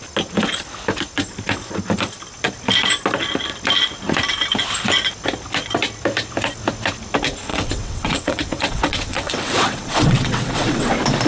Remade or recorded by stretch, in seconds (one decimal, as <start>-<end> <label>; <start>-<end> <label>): 0.0-7.5 recorded; 7.5-10.9 remade; 10.9-11.3 recorded